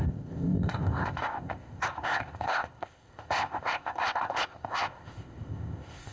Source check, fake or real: fake